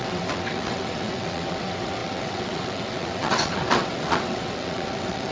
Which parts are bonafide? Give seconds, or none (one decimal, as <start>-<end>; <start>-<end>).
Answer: none